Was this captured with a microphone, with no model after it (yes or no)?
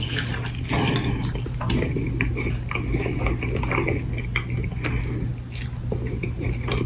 yes